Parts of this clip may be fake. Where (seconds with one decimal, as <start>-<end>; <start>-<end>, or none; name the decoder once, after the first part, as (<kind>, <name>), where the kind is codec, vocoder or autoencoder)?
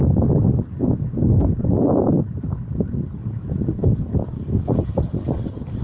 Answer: none